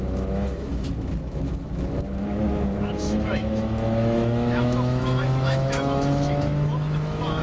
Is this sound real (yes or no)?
no